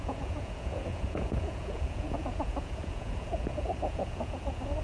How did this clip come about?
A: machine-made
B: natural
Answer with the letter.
A